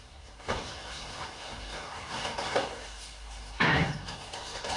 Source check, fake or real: fake